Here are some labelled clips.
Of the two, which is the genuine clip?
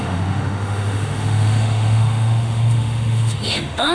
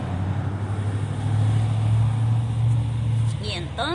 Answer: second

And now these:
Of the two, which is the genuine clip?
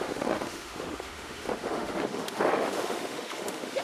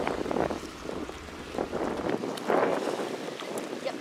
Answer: second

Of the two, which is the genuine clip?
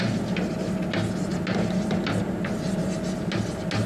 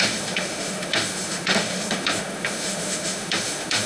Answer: first